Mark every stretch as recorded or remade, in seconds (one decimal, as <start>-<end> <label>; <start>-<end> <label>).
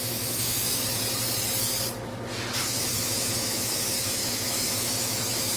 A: 0.0-0.8 remade; 0.8-2.6 recorded; 2.6-5.6 remade